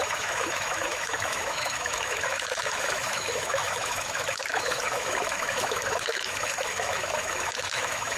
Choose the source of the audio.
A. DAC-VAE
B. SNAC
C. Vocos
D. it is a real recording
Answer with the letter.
A